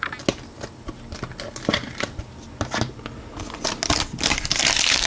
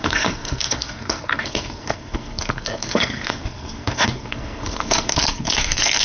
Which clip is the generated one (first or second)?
second